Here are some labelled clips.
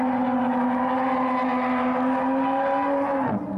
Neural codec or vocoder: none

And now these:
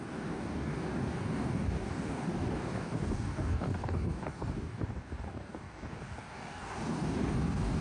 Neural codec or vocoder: codec, DAC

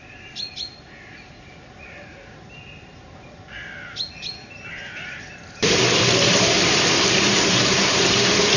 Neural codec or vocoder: none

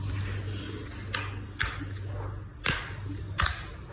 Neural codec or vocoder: none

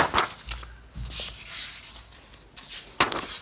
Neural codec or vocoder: none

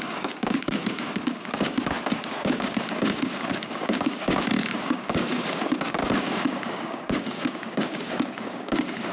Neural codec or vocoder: codec, DAC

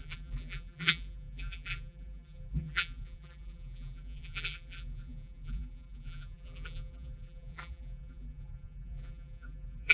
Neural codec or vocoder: vocoder, BigVGAN v2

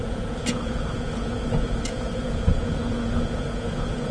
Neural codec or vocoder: vocoder, Vocos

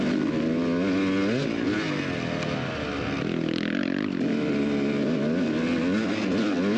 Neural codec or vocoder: none